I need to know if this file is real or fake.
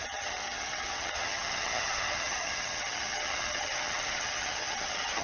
fake